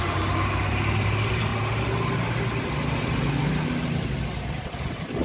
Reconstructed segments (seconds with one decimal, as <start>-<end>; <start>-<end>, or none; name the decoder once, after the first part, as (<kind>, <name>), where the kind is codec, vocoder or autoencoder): 0.0-1.5 (vocoder, BigVGAN v2); 4.6-5.2